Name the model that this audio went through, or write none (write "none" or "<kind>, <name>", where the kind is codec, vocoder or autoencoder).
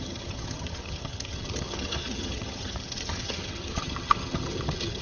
vocoder, HiFi-GAN